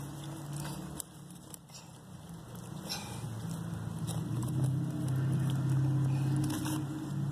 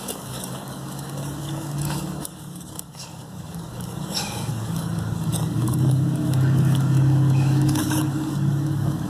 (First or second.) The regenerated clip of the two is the second